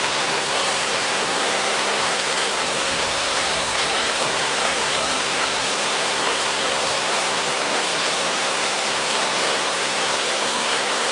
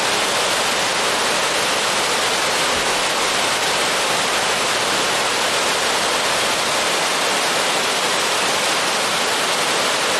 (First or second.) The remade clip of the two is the first